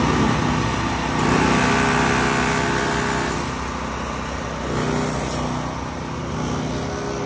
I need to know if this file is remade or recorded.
recorded